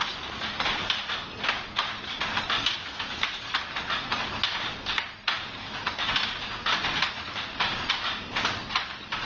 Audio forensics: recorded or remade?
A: recorded